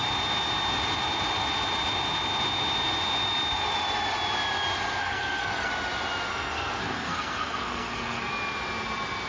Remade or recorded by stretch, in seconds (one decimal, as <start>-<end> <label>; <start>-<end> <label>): 0.0-5.0 recorded; 5.0-5.7 remade; 5.7-6.3 recorded; 6.3-8.3 remade; 8.3-9.3 recorded